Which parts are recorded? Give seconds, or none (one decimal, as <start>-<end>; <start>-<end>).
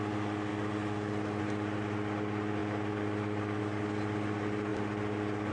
0.0-5.5